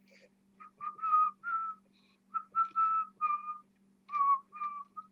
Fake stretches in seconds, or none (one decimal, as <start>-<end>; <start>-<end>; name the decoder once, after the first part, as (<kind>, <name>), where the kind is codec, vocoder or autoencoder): 0.5-1.3 (vocoder, BigVGAN v2)